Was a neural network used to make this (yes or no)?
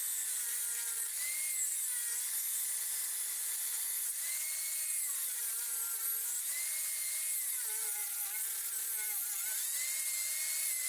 no